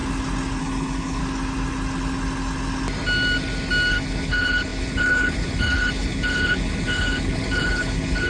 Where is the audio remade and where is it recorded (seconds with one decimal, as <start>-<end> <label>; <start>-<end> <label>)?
0.0-0.6 recorded; 0.6-1.2 remade; 1.2-3.9 recorded; 3.9-8.3 remade